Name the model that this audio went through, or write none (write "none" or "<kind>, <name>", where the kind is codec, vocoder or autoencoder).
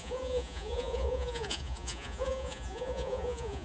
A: vocoder, Vocos